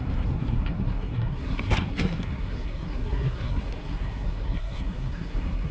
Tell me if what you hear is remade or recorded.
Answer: remade